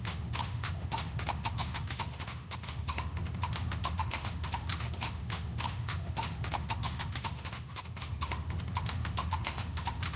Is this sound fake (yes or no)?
yes